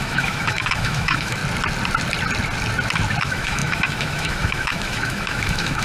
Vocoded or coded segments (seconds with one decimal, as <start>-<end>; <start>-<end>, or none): 0.0-1.4; 3.2-5.8